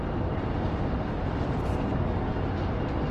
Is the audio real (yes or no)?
yes